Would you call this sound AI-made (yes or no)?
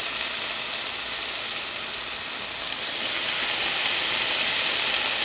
no